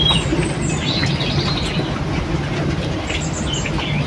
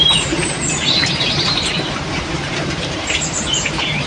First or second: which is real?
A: first